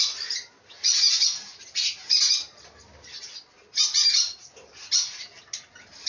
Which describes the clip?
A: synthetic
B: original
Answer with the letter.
B